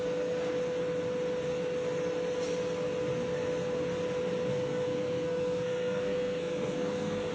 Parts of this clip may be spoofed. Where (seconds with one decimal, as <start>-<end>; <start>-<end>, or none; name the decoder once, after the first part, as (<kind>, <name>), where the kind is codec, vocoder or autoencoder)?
4.5-7.3 (codec, SNAC)

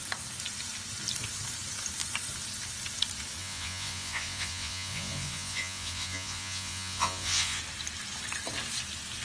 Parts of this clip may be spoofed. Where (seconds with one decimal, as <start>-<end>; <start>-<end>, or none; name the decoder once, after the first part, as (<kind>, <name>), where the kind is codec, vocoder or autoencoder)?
3.4-7.6 (vocoder, Vocos)

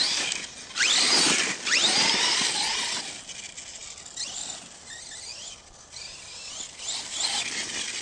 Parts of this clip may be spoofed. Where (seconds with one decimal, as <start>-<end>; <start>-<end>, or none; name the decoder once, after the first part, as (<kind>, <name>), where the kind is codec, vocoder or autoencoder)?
none

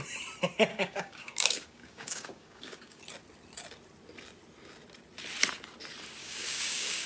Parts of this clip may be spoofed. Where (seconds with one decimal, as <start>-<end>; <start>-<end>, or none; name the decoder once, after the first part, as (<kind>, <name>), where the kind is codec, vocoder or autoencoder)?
0.7-3.0 (codec, DAC); 6.2-7.1

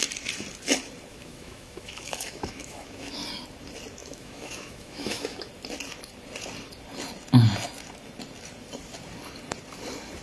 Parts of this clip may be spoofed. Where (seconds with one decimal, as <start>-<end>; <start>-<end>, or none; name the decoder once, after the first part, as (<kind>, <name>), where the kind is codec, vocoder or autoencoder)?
1.1-3.1 (autoencoder, DAC-VAE); 4.0-5.5